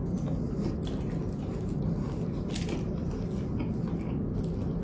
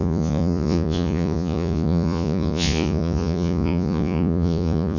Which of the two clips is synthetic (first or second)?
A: second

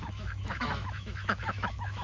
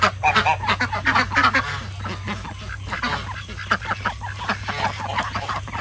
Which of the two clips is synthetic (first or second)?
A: first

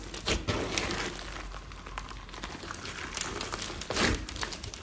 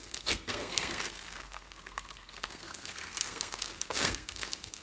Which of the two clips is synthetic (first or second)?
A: second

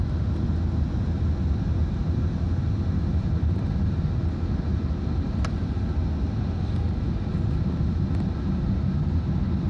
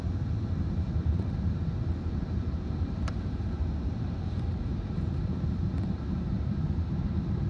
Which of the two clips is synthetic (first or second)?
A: second